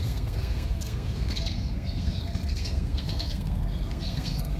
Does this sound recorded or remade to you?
remade